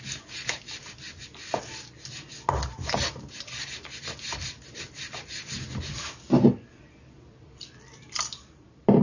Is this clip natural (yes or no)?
yes